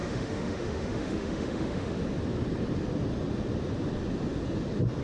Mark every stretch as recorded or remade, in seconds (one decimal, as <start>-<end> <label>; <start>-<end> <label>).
0.0-2.0 remade; 2.0-5.0 recorded